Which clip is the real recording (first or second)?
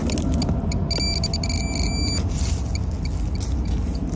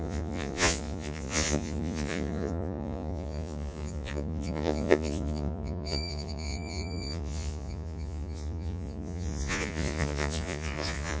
first